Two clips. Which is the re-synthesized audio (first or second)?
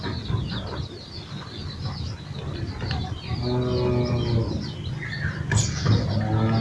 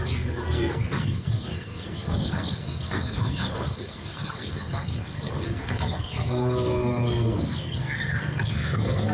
second